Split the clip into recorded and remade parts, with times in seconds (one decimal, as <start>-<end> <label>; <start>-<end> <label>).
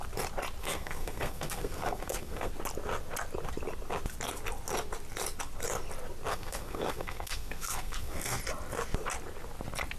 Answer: 0.0-0.6 recorded; 0.6-2.5 remade; 2.5-6.3 recorded; 6.3-8.4 remade; 8.4-10.0 recorded